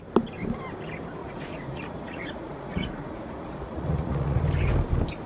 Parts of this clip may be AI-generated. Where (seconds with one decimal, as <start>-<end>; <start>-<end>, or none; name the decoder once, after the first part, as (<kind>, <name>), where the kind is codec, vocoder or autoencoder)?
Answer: 1.2-4.4 (vocoder, Vocos)